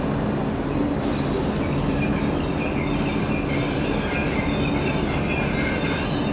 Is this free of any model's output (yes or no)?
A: yes